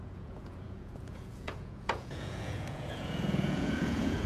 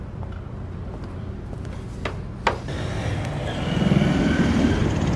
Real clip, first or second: second